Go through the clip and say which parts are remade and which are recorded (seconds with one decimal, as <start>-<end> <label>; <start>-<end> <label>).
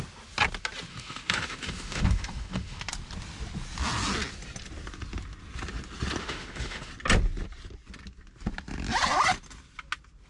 0.0-0.9 recorded; 0.9-2.8 remade; 2.8-6.2 recorded; 6.2-6.9 remade; 6.9-10.3 recorded